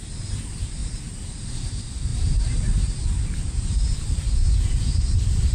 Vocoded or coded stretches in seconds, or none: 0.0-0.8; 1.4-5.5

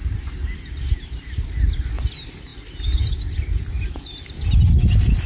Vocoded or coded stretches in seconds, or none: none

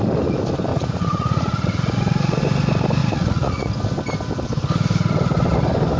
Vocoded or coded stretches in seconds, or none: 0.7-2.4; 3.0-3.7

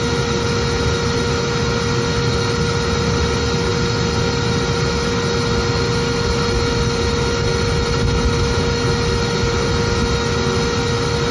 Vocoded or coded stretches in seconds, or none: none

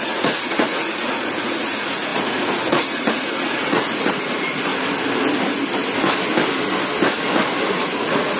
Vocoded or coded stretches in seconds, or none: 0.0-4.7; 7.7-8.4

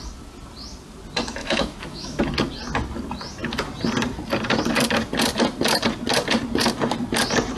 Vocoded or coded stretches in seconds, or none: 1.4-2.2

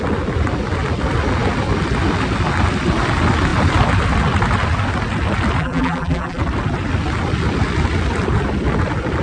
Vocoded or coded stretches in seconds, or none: 5.6-6.4